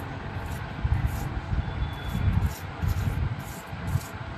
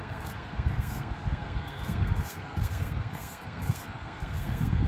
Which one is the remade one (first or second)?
second